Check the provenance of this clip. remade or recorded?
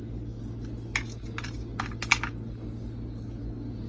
recorded